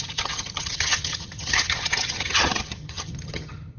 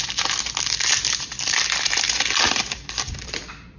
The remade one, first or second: first